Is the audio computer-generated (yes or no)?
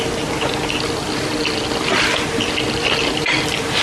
no